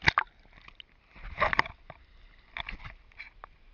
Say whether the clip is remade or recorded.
recorded